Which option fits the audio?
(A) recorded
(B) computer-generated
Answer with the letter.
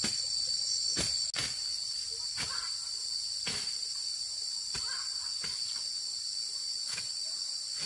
A